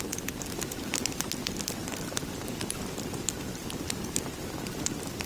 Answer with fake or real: real